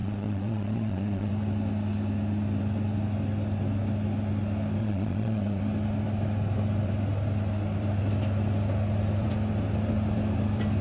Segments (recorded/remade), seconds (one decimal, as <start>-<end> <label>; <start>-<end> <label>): 0.0-1.3 remade; 1.3-4.8 recorded; 4.8-5.6 remade; 5.6-10.8 recorded